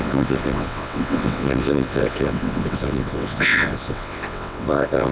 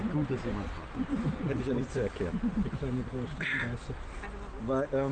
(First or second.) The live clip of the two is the second